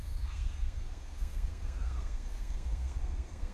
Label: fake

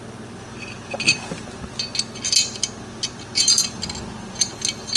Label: real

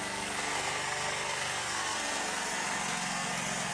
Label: fake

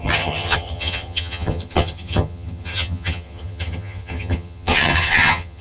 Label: fake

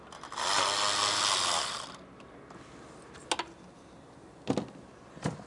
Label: real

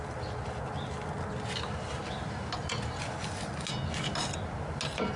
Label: real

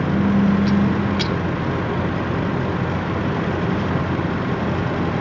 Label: real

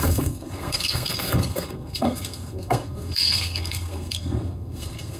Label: fake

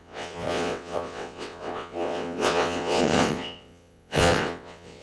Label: fake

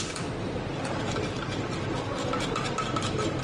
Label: real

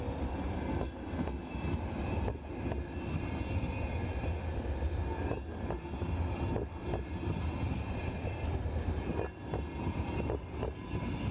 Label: real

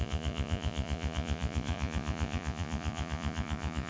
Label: fake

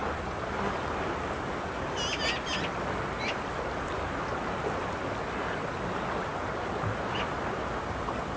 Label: real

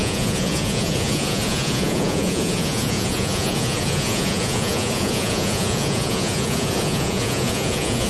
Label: fake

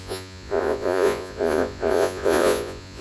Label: fake